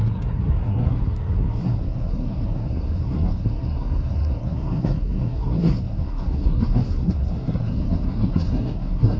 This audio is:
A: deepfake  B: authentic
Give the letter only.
A